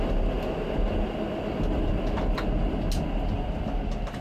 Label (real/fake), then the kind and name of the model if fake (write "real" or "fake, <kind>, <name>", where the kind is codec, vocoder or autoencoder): real